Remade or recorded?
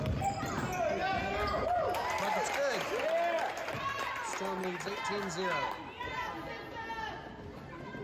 recorded